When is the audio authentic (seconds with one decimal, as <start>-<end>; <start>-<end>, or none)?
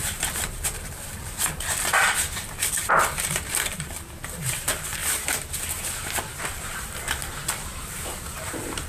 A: 5.0-6.4; 7.2-7.8